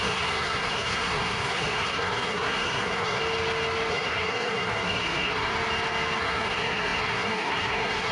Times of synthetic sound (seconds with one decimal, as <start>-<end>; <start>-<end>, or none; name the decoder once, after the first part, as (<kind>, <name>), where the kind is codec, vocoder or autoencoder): 0.0-3.2 (codec, SNAC); 3.9-5.5; 6.2-8.1

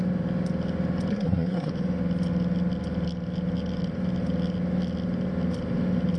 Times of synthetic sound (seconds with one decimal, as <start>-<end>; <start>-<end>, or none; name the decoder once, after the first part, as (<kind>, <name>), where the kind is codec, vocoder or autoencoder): 1.1-1.7 (codec, SNAC)

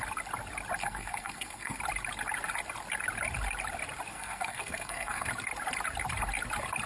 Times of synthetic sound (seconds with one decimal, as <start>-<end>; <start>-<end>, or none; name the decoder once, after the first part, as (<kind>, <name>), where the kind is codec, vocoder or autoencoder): 0.8-1.8 (codec, SNAC); 4.1-5.3